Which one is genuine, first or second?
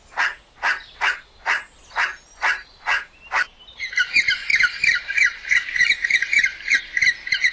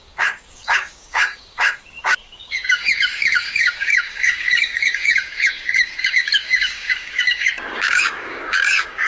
first